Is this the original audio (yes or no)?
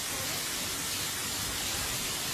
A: yes